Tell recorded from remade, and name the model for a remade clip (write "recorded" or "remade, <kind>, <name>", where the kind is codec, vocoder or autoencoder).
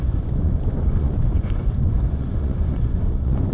remade, vocoder, Vocos